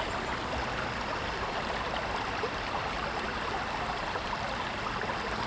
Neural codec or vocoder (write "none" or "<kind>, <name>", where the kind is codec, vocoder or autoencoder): none